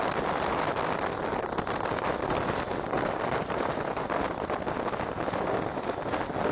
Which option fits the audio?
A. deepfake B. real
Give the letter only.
B